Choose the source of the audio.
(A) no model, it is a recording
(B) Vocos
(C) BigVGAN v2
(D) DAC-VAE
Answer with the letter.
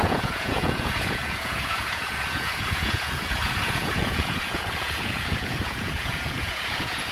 B